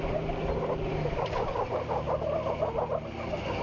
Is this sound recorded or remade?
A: recorded